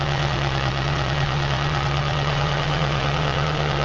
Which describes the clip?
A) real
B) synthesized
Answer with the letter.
B